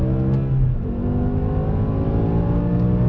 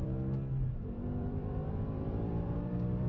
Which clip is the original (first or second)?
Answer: first